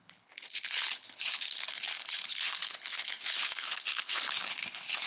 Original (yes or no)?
no